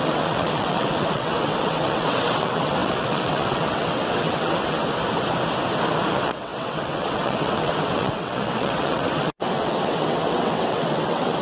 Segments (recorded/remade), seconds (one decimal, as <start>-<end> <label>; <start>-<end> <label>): 0.0-4.8 remade; 4.8-6.1 recorded; 6.1-11.4 remade